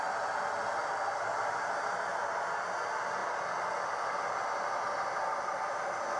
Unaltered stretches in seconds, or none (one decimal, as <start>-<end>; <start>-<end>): 0.0-6.2